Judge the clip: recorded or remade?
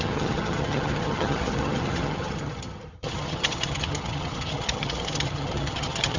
remade